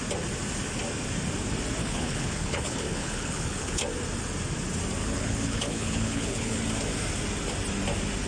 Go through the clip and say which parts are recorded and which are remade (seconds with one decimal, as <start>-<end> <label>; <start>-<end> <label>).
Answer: 0.0-1.8 recorded; 1.8-3.8 remade; 3.8-5.0 recorded; 5.0-6.6 remade; 6.6-8.3 recorded